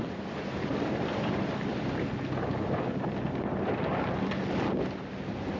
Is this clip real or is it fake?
real